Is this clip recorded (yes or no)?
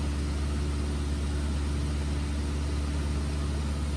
yes